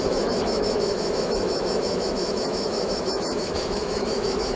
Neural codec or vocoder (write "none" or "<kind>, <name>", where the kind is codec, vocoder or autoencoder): autoencoder, DAC-VAE